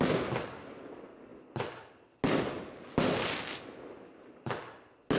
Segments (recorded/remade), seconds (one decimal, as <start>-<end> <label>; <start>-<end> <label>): 0.0-5.2 recorded